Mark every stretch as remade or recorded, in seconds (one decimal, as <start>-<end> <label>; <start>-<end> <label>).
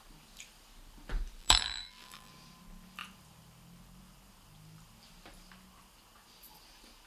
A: 0.0-1.4 recorded; 1.4-2.3 remade; 2.3-7.1 recorded